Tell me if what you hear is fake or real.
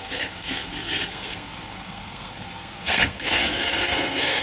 fake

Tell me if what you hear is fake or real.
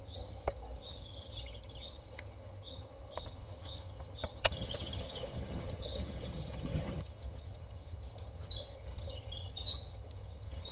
fake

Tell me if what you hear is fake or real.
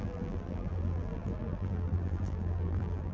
fake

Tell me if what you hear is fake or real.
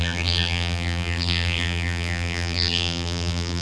fake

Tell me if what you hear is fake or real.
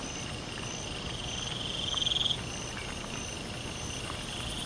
real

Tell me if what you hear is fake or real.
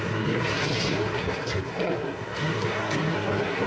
fake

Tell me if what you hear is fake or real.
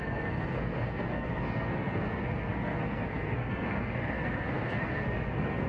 fake